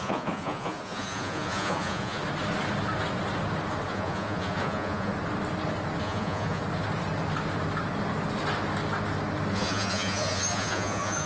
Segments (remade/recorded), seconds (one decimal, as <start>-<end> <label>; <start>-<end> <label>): 0.0-2.2 remade; 2.2-3.9 recorded; 3.9-5.1 remade; 5.1-6.0 recorded; 6.0-6.6 remade; 6.6-9.5 recorded; 9.5-11.3 remade